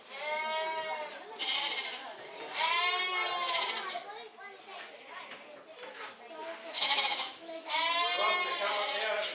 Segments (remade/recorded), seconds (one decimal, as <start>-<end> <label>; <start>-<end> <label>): 0.0-6.6 recorded; 6.6-7.7 remade; 7.7-9.3 recorded